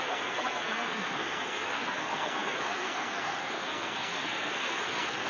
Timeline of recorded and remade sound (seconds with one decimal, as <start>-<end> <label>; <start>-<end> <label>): 0.0-5.3 remade